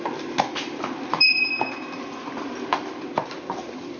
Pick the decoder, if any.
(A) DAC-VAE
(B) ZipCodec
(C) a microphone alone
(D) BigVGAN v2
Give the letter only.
C